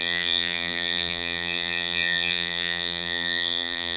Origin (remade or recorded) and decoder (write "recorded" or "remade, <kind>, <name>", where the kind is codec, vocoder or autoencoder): remade, vocoder, BigVGAN v2